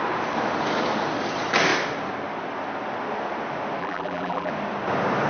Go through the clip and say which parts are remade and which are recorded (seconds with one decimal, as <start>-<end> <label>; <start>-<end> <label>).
0.0-3.8 recorded; 3.8-4.5 remade; 4.5-5.3 recorded